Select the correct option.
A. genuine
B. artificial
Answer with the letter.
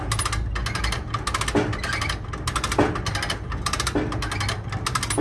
A